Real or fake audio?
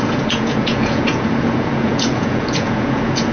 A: fake